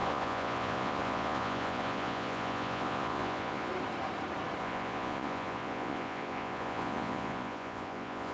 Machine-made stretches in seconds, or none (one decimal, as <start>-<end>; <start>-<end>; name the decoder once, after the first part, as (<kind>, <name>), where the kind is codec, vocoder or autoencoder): 0.0-3.7 (vocoder, Vocos); 4.6-8.3